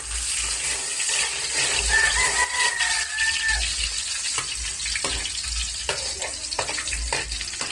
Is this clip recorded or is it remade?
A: recorded